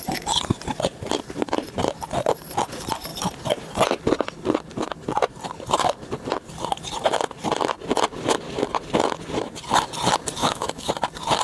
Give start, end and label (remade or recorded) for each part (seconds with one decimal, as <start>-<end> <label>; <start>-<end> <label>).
0.0-10.4 recorded; 10.4-10.9 remade; 10.9-11.4 recorded